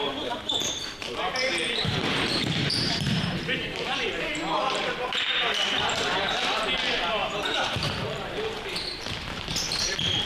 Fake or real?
fake